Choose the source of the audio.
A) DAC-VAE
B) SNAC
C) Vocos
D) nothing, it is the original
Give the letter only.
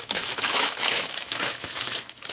A